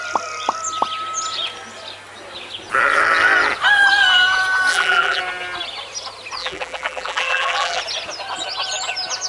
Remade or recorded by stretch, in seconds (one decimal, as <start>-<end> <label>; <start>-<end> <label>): 0.0-4.7 recorded; 4.7-5.2 remade; 5.2-6.4 recorded; 6.4-7.8 remade; 7.8-9.3 recorded